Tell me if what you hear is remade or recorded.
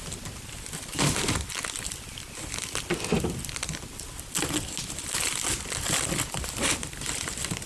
recorded